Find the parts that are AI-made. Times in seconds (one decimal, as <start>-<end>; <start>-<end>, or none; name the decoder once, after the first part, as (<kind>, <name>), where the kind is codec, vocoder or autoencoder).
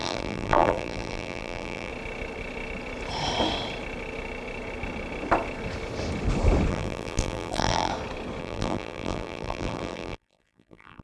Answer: 0.0-1.9 (vocoder, BigVGAN v2); 6.7-7.9; 8.4-11.0